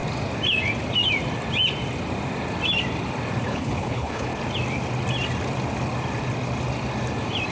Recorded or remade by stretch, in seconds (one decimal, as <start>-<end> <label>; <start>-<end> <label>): 0.0-3.4 recorded; 3.4-4.3 remade; 4.3-7.5 recorded